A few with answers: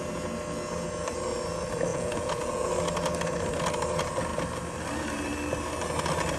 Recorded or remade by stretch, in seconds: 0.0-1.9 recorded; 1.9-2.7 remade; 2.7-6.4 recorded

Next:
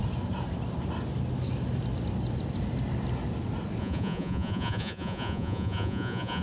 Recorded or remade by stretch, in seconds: 0.0-3.8 recorded; 3.8-6.4 remade

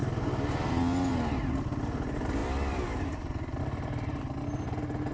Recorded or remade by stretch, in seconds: 0.0-5.1 recorded

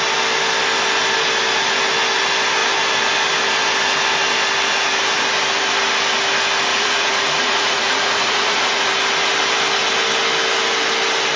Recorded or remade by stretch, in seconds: 0.0-6.7 recorded; 6.7-8.9 remade; 8.9-11.4 recorded

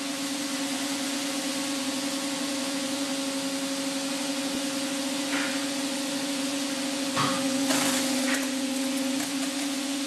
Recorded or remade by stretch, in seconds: 0.0-3.1 remade; 3.1-4.1 recorded; 4.1-10.1 remade

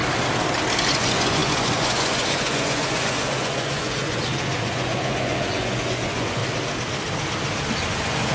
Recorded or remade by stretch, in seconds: 0.0-0.8 recorded; 0.8-6.4 remade; 6.4-7.9 recorded; 7.9-8.3 remade

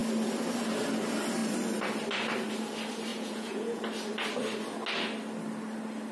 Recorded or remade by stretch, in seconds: 0.0-3.1 recorded; 3.1-3.8 remade; 3.8-6.1 recorded

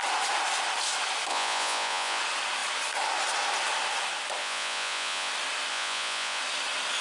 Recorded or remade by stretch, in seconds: 0.0-1.3 recorded; 1.3-2.2 remade; 2.2-4.4 recorded; 4.4-5.3 remade; 5.3-5.7 recorded; 5.7-6.4 remade; 6.4-7.0 recorded